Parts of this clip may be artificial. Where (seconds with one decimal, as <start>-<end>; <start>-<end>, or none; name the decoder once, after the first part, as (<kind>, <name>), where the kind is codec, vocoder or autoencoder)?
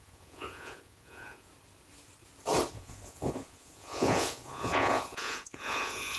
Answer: 0.0-1.5 (vocoder, Vocos); 2.7-6.2